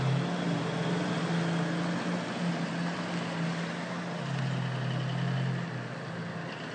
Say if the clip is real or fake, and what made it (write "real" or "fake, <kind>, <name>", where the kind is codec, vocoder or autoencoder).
real